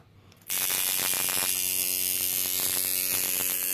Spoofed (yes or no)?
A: no